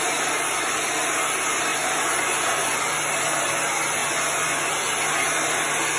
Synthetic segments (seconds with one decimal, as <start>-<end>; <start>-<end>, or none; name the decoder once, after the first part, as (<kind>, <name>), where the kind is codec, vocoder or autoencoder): 1.7-2.9 (vocoder, Vocos); 4.0-4.7